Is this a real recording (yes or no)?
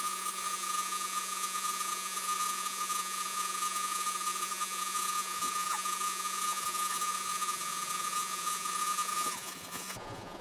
no